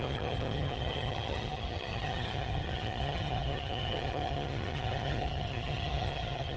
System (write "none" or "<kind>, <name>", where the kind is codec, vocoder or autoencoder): vocoder, HiFi-GAN